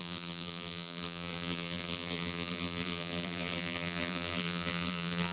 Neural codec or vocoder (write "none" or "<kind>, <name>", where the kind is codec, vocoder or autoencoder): vocoder, BigVGAN v2